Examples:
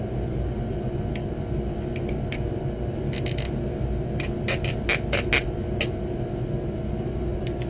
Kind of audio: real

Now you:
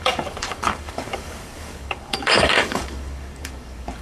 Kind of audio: fake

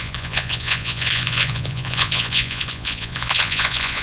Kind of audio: fake